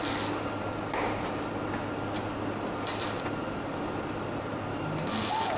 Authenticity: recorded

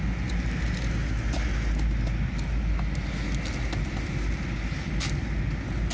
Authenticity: recorded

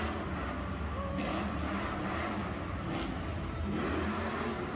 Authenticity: recorded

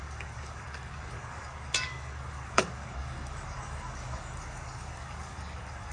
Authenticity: remade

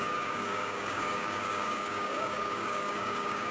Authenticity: remade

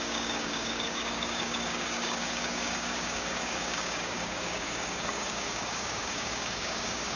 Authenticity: remade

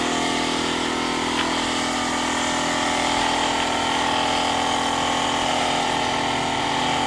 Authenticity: recorded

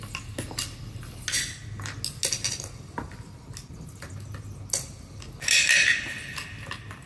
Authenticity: recorded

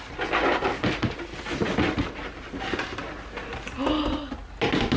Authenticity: recorded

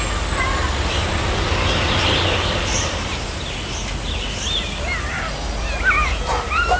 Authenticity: recorded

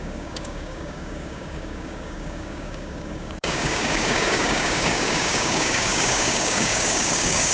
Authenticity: remade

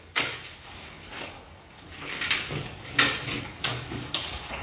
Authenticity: remade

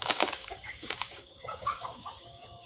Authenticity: remade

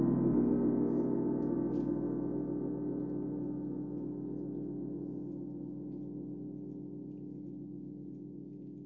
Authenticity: recorded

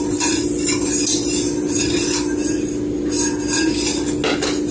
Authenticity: recorded